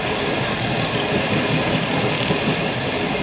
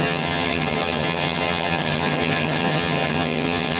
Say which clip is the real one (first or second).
first